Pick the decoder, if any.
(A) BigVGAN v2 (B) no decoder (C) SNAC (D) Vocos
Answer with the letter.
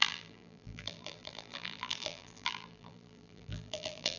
A